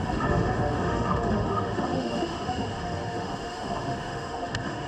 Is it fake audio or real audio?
fake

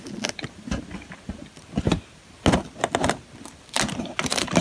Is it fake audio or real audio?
real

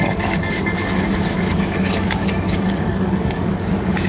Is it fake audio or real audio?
fake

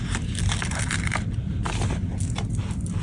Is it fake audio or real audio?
real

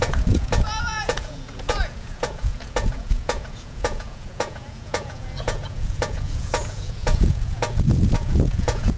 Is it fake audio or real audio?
fake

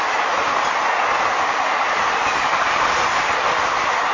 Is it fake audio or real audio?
real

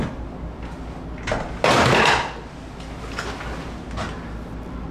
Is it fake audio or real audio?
real